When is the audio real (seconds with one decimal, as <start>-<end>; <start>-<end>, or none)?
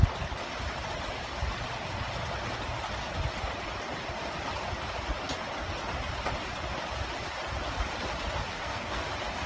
0.0-8.5; 9.0-9.5